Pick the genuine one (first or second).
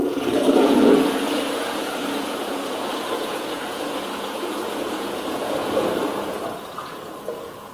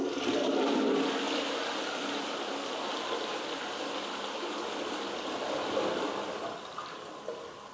second